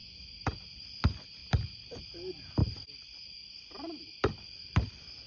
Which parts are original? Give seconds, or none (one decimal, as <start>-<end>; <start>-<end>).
0.0-5.3